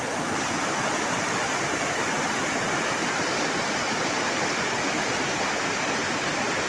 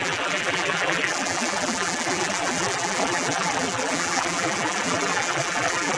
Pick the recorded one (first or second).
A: first